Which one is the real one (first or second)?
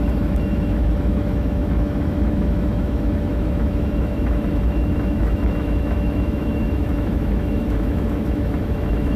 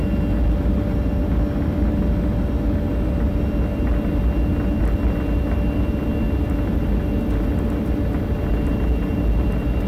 second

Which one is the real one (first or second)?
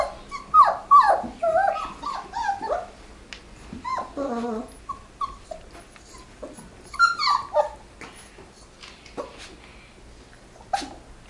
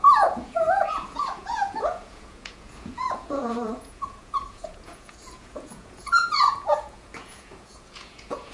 first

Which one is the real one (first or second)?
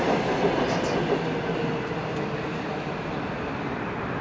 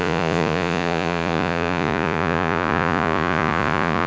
first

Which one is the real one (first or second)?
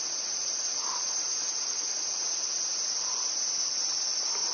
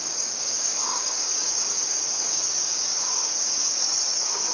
first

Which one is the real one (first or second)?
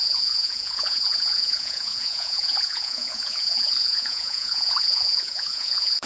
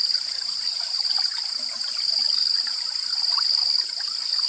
second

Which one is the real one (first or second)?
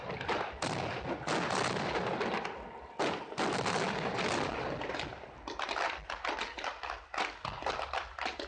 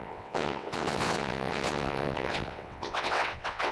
first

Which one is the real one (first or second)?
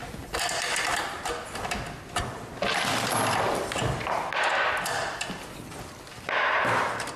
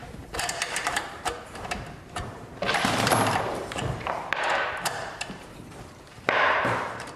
first